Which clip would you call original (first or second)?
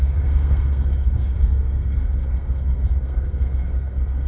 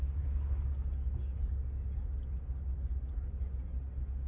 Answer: second